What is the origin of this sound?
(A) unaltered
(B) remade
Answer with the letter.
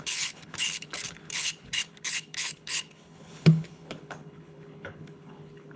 B